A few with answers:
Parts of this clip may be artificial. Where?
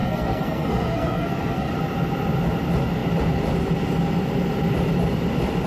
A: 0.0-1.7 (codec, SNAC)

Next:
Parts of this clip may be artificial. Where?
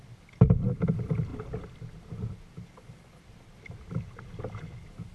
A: none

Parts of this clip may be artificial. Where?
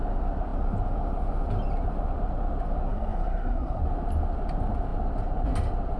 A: 2.9-3.8 (codec, SNAC)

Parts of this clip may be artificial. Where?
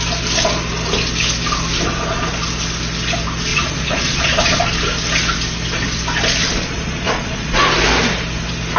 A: 3.5-4.6 (vocoder, Vocos); 6.4-7.5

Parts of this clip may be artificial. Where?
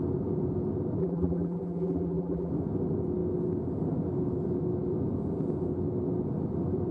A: 1.0-2.5 (vocoder, BigVGAN v2)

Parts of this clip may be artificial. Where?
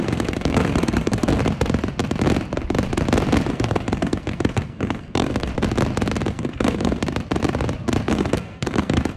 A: 0.0-1.4 (codec, SNAC); 3.5-5.5; 6.3-7.0; 8.1-9.2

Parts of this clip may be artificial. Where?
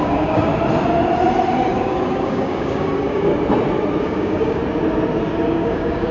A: 0.0-0.5 (codec, DAC); 1.8-3.3; 4.0-4.6; 5.5-6.1